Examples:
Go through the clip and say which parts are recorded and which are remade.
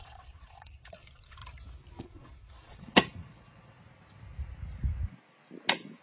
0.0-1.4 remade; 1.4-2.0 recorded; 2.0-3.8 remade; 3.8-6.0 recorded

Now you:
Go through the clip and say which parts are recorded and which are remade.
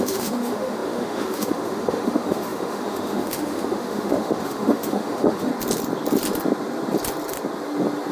0.0-5.5 remade; 5.5-8.1 recorded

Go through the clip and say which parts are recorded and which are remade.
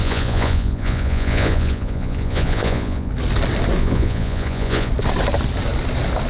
0.0-3.1 remade; 3.1-3.8 recorded; 3.8-4.9 remade; 4.9-6.3 recorded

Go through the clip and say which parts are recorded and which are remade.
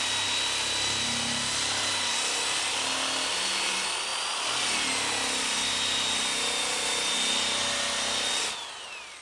0.0-9.2 recorded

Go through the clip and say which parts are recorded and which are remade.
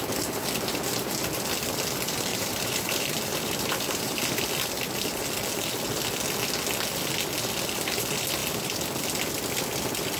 0.0-2.3 recorded; 2.3-4.4 remade; 4.4-10.2 recorded